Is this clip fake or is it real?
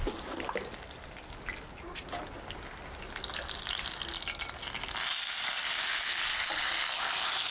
real